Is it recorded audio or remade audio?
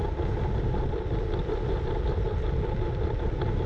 recorded